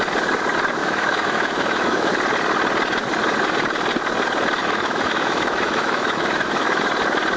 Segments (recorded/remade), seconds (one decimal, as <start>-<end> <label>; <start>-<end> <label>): 0.0-0.8 recorded; 0.8-2.1 remade; 2.1-4.6 recorded; 4.6-6.8 remade; 6.8-7.4 recorded